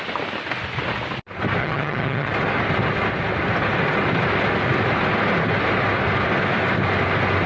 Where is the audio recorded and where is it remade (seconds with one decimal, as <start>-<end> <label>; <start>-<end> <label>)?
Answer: 0.0-1.6 recorded; 1.6-2.3 remade; 2.3-7.5 recorded